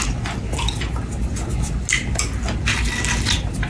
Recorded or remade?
recorded